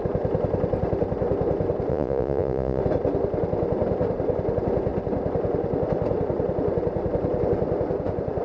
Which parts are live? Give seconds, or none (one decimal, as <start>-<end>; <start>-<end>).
0.0-1.9; 2.8-8.4

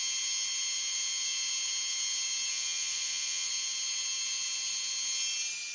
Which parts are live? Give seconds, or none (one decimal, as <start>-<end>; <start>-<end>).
0.0-2.5; 3.5-5.7

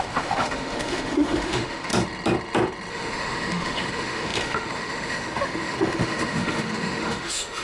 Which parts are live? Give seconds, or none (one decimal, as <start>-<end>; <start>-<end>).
1.9-2.9

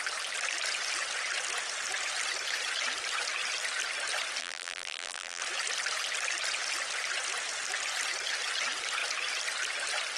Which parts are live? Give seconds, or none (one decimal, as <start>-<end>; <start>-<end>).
0.0-4.4; 5.4-10.2

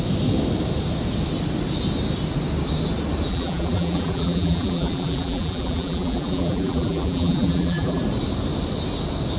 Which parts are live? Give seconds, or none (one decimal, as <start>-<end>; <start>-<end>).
0.0-3.3; 8.0-9.4